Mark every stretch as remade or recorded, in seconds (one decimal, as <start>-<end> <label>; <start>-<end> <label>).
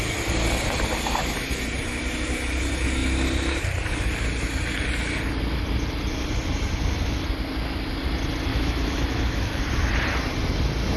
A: 0.0-8.5 recorded; 8.5-9.6 remade; 9.6-11.0 recorded